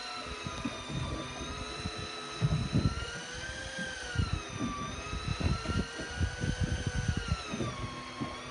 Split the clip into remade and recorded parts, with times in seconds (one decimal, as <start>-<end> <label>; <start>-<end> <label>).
0.0-5.3 recorded; 5.3-5.8 remade; 5.8-8.5 recorded